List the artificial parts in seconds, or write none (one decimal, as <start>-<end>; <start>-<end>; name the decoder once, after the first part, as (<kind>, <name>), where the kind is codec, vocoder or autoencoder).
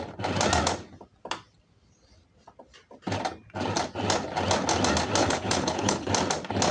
5.2-6.1 (codec, HILCodec)